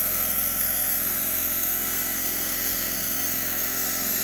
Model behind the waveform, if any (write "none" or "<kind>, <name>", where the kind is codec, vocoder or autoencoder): codec, SNAC